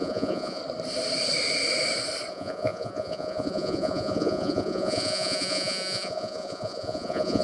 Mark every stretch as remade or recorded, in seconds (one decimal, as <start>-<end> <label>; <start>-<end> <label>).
0.0-0.6 remade; 0.6-2.3 recorded; 2.3-7.4 remade